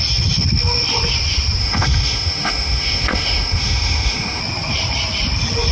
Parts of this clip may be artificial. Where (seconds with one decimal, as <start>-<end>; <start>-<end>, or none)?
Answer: 1.6-4.4